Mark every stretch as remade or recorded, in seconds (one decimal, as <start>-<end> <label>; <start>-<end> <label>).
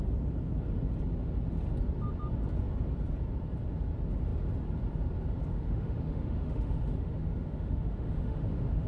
0.0-5.5 recorded; 5.5-8.9 remade